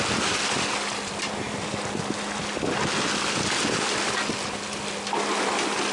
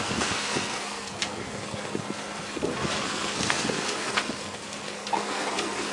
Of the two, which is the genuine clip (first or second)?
first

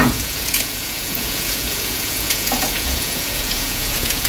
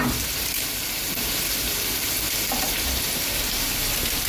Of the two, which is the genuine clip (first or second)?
second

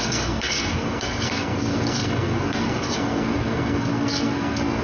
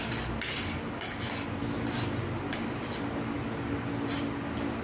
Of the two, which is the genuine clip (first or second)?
second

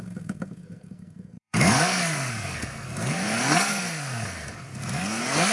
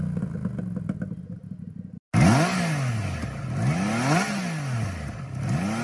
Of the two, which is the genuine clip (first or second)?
second